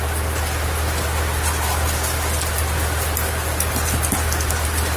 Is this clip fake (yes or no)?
no